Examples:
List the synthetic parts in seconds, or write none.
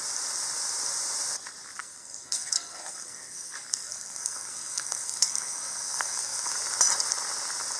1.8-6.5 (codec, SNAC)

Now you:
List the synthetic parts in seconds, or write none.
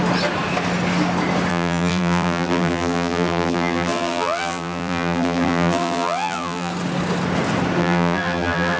1.5-6.7 (vocoder, BigVGAN v2); 7.8-8.8